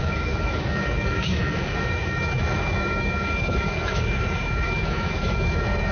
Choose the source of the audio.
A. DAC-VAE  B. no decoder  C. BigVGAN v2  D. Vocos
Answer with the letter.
A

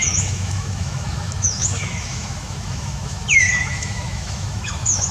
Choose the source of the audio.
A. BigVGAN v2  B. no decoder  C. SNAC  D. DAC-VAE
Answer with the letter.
D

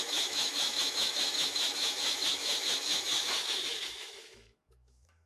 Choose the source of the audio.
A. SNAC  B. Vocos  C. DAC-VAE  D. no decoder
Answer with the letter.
C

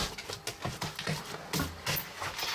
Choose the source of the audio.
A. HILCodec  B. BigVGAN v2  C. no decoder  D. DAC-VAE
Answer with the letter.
C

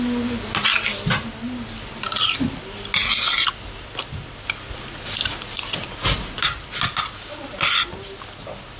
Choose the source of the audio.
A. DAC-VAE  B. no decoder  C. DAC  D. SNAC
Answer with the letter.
B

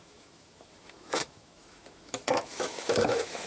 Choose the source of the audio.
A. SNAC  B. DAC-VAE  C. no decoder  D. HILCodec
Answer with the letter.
B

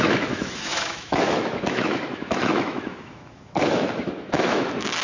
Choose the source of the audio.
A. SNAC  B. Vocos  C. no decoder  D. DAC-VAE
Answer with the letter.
D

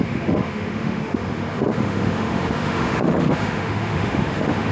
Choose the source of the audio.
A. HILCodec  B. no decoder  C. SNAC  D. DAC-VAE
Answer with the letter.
D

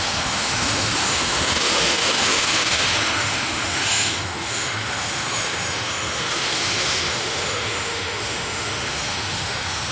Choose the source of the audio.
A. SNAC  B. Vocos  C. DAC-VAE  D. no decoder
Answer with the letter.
C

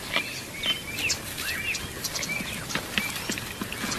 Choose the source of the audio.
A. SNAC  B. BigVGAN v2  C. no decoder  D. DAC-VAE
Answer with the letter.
C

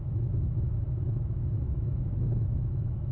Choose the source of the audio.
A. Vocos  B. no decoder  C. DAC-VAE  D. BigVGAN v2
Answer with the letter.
C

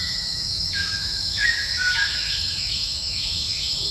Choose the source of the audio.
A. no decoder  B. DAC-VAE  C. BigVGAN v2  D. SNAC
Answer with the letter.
B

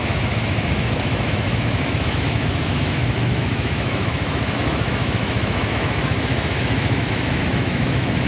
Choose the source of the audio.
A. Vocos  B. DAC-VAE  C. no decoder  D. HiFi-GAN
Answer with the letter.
B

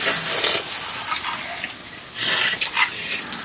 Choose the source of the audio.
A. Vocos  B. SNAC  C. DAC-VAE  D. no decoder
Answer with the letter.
D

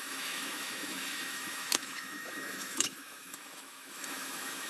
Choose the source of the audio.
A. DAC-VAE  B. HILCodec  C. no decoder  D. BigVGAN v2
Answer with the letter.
A